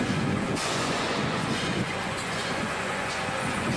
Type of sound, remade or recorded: remade